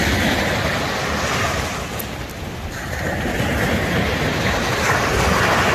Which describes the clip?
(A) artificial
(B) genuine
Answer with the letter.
B